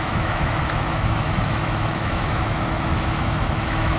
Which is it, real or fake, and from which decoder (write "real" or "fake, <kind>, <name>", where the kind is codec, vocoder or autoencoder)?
fake, autoencoder, DAC-VAE